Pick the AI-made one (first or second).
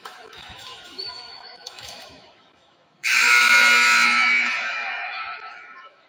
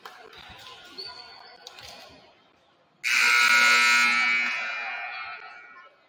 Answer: first